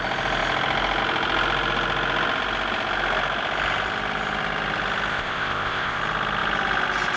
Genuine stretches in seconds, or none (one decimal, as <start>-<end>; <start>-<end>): 0.0-5.1; 6.0-7.2